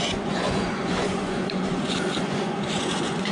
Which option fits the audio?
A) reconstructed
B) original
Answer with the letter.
A